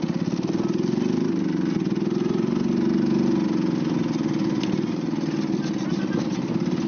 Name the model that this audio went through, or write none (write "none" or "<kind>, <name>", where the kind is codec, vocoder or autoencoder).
none